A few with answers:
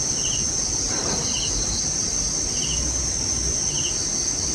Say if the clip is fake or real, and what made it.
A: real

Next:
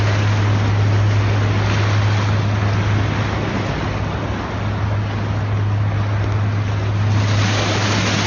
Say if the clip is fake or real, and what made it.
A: real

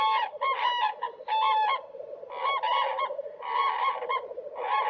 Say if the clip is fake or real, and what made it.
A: real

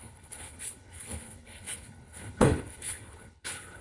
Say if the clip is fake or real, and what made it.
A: fake, codec, HILCodec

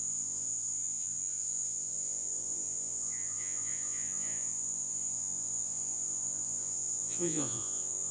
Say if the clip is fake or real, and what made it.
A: fake, vocoder, Vocos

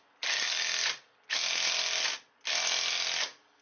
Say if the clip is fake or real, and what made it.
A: real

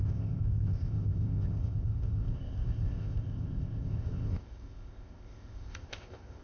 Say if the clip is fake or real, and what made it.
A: fake, codec, ZipCodec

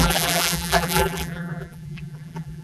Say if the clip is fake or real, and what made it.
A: fake, vocoder, BigVGAN v2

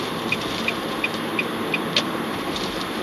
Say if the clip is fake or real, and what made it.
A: real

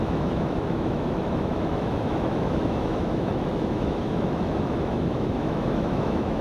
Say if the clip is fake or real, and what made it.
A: fake, autoencoder, DAC-VAE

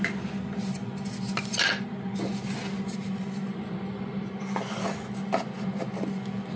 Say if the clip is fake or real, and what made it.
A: real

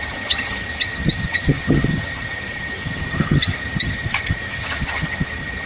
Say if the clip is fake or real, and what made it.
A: fake, vocoder, HiFi-GAN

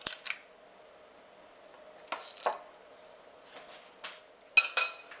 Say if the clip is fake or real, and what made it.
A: real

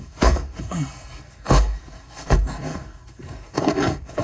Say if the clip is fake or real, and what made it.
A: fake, codec, SNAC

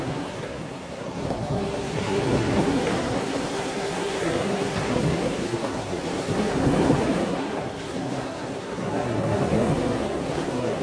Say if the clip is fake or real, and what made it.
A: fake, codec, SNAC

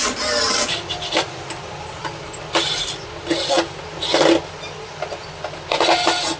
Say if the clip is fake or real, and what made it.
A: real